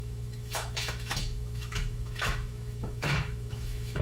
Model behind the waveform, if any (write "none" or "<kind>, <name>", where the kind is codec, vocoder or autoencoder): autoencoder, DAC-VAE